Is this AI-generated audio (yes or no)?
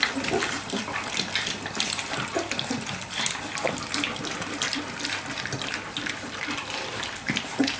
no